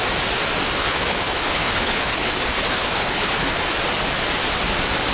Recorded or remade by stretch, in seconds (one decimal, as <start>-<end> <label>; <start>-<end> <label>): 0.0-0.8 recorded; 0.8-3.6 remade; 3.6-5.1 recorded